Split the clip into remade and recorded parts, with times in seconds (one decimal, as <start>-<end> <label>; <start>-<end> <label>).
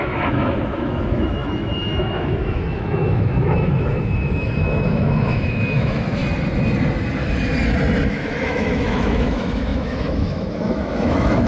0.0-6.2 remade; 6.2-8.1 recorded; 8.1-11.5 remade